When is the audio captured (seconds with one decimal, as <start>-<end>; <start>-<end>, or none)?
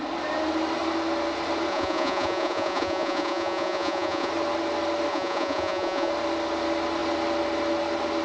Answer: 0.0-1.7; 4.3-5.1; 6.1-8.2